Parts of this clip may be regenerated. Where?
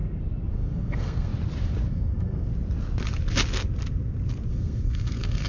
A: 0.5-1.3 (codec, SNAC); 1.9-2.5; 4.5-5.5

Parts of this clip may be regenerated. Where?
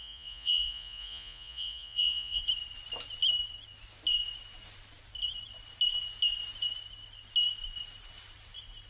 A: 0.0-2.4 (vocoder, Vocos)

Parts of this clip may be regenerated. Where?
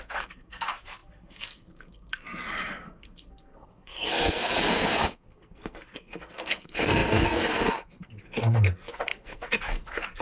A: 0.0-10.2 (codec, SNAC)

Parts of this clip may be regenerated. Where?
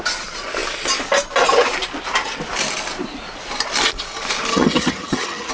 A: 4.5-5.5 (vocoder, HiFi-GAN)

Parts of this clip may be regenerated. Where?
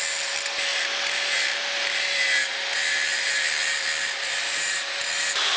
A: 0.7-2.5 (vocoder, BigVGAN v2); 3.1-4.9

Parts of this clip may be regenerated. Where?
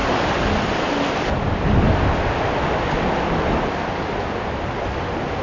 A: none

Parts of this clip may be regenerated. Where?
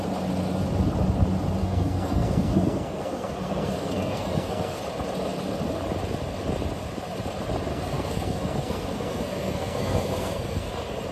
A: 1.6-4.8 (codec, SNAC); 7.7-10.7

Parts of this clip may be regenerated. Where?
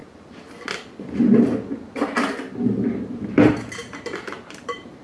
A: 3.0-5.0 (vocoder, BigVGAN v2)